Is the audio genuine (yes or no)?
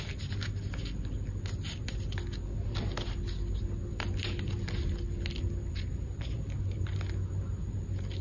yes